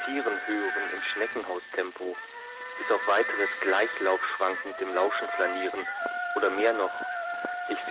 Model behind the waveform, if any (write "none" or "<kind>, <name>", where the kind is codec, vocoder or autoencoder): none